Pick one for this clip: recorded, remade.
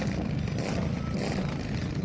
recorded